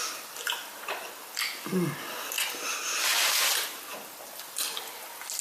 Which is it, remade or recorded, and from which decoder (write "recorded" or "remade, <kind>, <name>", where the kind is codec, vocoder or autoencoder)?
recorded